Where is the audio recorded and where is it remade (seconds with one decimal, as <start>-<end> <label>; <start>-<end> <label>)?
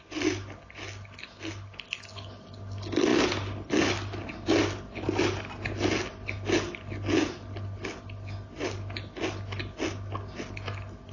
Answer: 0.0-11.1 recorded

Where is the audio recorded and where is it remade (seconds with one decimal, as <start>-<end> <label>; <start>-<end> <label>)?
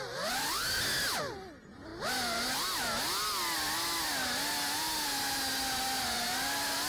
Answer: 0.0-6.9 recorded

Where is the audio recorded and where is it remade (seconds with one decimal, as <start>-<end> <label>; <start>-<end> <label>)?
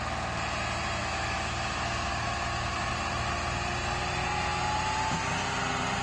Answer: 0.0-1.0 recorded; 1.0-2.9 remade; 2.9-6.0 recorded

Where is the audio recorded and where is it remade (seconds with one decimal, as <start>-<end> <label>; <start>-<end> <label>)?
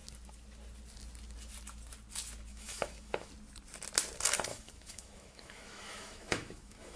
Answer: 0.0-2.5 recorded; 2.5-3.3 remade; 3.3-4.5 recorded; 4.5-7.0 remade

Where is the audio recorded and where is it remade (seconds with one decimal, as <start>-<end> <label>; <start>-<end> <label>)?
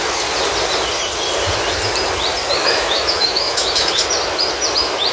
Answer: 0.0-2.6 recorded; 2.6-4.0 remade; 4.0-5.1 recorded